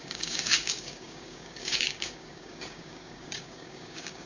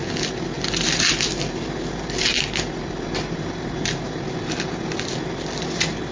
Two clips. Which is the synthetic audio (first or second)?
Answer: first